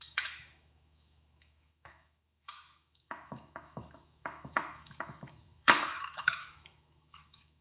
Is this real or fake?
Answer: fake